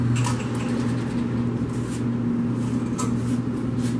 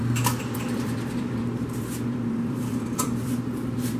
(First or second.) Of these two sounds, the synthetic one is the second